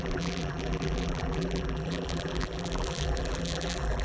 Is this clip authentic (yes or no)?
no